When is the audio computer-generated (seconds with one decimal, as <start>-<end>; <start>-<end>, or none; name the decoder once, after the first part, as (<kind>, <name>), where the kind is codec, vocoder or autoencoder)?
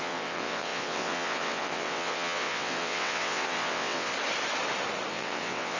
0.0-4.1 (vocoder, WaveNeXt); 5.1-5.8